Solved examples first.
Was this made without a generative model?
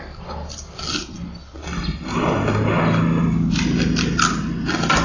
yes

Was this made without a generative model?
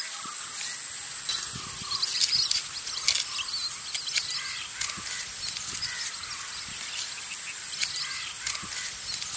yes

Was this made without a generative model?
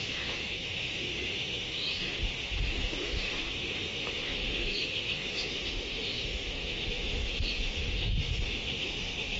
no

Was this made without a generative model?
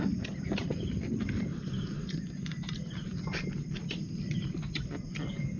yes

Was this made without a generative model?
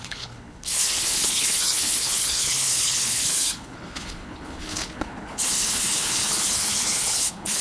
no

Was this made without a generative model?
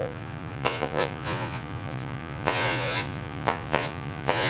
no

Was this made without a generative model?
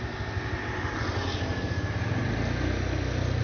yes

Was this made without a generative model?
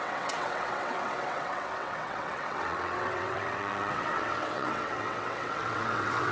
no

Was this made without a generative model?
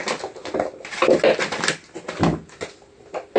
yes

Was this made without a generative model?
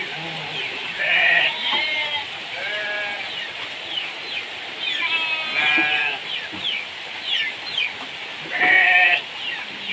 yes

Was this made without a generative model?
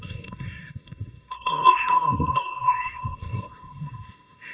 no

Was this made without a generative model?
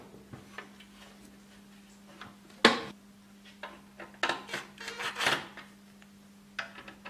yes